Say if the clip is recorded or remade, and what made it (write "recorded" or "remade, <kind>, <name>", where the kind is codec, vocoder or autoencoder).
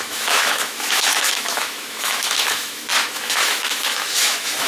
remade, autoencoder, DAC-VAE